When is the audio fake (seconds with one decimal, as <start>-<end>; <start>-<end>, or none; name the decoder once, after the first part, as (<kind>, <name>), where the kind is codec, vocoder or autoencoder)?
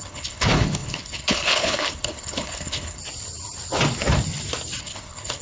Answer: 0.0-3.0 (codec, HILCodec); 4.8-5.4